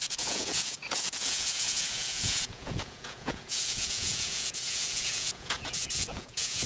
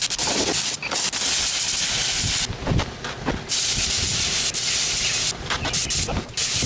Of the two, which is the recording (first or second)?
second